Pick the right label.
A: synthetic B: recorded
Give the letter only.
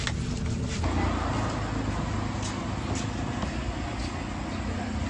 B